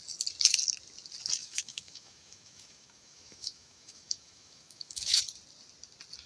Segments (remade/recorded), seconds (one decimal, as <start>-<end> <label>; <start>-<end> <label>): 0.0-1.4 recorded; 1.4-5.2 remade; 5.2-6.3 recorded